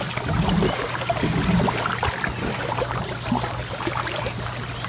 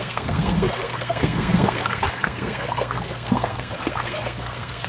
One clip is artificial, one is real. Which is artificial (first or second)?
second